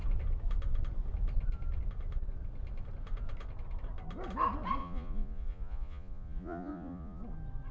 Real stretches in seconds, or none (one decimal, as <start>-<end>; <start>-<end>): 0.0-4.8; 7.2-7.7

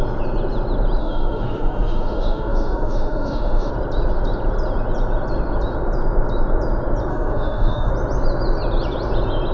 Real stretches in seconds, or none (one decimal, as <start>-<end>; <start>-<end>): 0.0-1.0; 3.7-7.1; 7.9-9.5

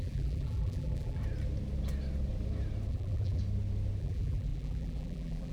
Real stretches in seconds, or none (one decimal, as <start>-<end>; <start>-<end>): 1.2-2.9; 3.4-4.0

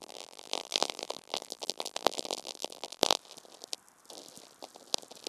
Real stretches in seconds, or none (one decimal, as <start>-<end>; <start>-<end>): 3.2-5.3

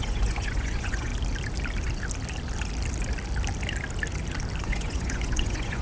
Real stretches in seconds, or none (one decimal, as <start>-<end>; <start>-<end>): 1.1-4.6